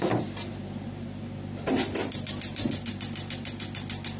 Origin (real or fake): real